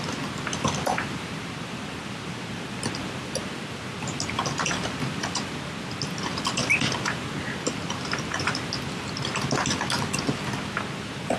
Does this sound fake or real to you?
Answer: real